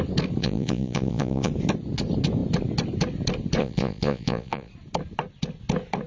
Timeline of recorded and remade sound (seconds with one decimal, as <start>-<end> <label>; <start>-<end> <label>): 0.0-0.4 recorded; 0.4-1.5 remade; 1.5-3.6 recorded; 3.6-4.7 remade; 4.7-6.1 recorded